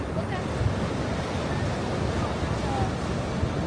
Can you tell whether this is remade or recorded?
recorded